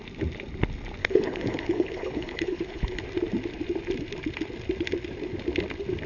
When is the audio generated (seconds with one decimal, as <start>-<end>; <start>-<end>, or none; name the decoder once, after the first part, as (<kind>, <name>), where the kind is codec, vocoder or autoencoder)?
1.0-3.0 (codec, HILCodec)